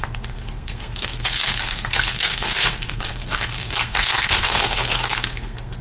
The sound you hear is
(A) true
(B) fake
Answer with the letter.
B